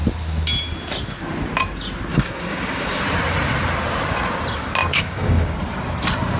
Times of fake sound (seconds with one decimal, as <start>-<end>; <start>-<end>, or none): 2.1-3.0; 4.8-5.5